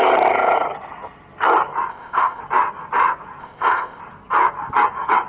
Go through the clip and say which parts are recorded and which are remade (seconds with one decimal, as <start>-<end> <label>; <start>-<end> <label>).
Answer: 0.0-1.9 recorded; 1.9-2.4 remade; 2.4-3.4 recorded; 3.4-4.0 remade; 4.0-5.3 recorded

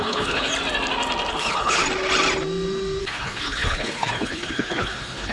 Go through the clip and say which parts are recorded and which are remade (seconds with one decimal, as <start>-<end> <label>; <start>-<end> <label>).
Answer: 0.0-0.5 remade; 0.5-1.3 recorded; 1.3-1.8 remade; 1.8-3.0 recorded; 3.0-5.3 remade